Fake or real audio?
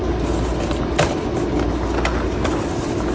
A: real